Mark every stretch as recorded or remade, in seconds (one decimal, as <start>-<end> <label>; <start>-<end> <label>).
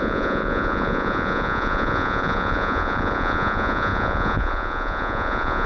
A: 0.0-5.7 remade